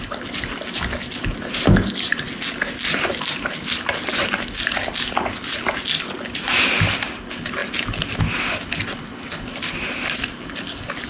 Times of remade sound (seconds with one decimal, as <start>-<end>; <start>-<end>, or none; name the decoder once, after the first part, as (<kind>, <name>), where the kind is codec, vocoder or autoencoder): none